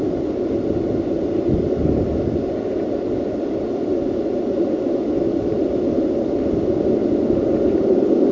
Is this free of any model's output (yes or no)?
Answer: yes